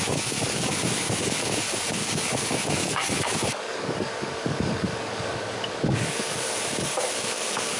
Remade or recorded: remade